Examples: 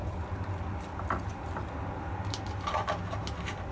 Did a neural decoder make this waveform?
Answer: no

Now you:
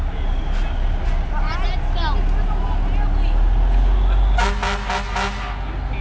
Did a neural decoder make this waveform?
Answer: no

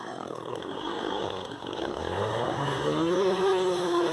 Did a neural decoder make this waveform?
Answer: yes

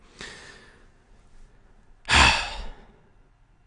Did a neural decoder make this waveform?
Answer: no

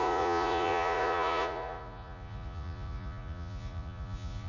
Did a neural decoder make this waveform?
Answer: yes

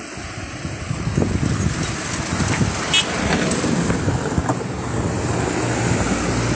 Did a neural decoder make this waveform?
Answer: no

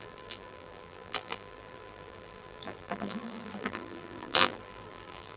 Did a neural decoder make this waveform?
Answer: yes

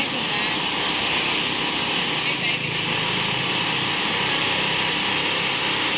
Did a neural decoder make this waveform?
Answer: no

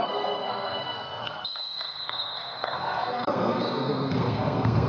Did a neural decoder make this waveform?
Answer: yes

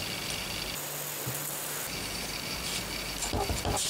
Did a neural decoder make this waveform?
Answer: no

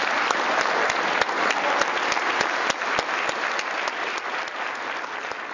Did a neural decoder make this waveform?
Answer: no